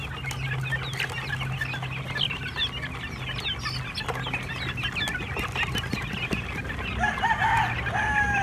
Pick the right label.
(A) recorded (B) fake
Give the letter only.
A